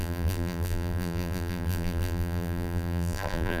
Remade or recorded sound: remade